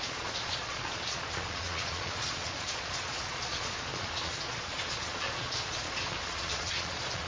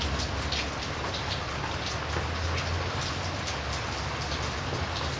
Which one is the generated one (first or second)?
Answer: first